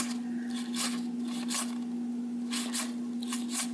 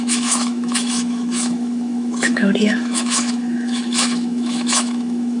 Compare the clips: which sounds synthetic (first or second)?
second